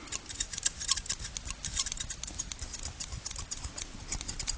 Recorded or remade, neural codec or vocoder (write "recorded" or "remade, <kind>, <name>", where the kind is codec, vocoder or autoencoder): recorded